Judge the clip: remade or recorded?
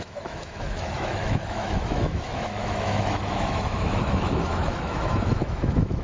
remade